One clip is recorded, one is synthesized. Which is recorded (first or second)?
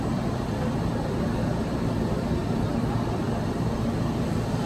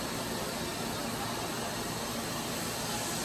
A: second